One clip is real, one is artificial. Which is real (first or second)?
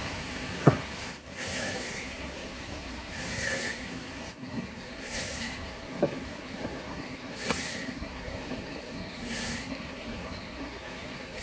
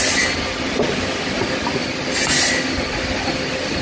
second